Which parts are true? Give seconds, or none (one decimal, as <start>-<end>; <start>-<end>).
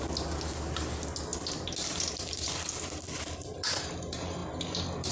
0.0-5.1